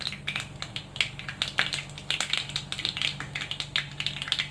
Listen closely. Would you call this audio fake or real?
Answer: real